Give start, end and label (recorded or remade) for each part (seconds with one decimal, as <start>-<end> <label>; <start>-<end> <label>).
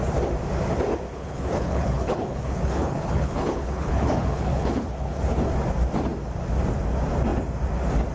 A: 0.0-1.1 recorded; 1.1-5.2 remade; 5.2-8.1 recorded